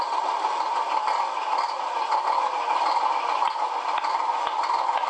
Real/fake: fake